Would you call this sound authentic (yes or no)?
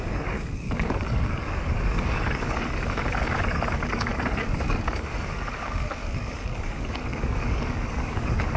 no